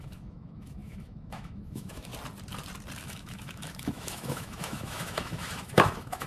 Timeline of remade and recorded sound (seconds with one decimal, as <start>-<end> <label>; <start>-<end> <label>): 0.0-2.1 remade; 2.1-3.0 recorded; 3.0-6.3 remade